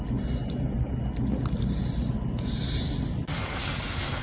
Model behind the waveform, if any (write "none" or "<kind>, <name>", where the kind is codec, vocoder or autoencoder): none